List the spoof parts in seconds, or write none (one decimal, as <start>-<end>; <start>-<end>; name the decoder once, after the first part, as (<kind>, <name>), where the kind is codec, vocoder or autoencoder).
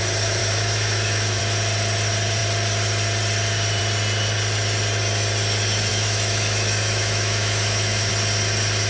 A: 0.4-1.4 (autoencoder, DAC-VAE); 5.9-8.1